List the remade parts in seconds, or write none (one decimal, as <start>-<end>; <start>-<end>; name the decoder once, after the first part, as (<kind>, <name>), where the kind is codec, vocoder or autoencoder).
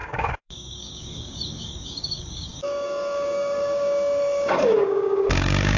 0.0-5.8 (codec, DAC)